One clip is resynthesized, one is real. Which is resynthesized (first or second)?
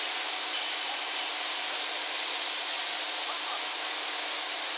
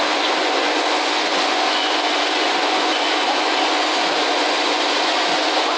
second